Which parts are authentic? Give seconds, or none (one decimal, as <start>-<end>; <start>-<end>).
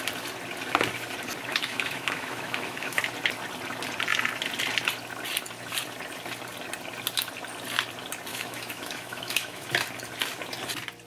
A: 0.0-1.5; 3.0-8.3; 9.7-11.1